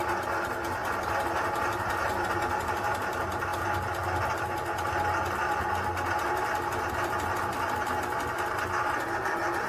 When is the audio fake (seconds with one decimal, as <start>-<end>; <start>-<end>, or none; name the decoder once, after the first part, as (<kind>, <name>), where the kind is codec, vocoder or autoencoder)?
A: none